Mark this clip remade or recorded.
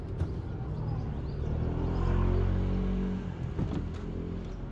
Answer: recorded